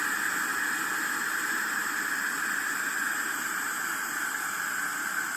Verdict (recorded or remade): recorded